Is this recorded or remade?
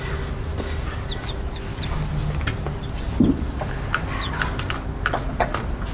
recorded